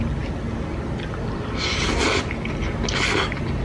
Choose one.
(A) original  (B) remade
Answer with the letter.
A